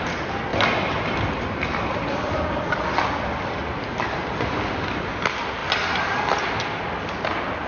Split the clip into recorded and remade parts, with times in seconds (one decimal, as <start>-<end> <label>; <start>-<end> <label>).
0.0-0.5 recorded; 0.5-5.1 remade; 5.1-5.6 recorded; 5.6-6.2 remade; 6.2-7.7 recorded